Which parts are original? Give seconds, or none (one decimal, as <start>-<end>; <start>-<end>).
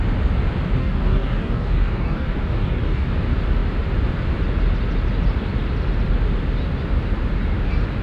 0.0-0.8; 3.1-8.0